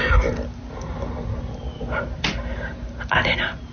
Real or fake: real